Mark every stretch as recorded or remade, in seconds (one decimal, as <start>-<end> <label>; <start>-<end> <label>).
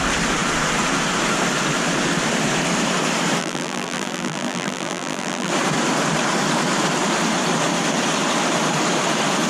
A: 0.0-3.4 recorded; 3.4-5.5 remade; 5.5-9.5 recorded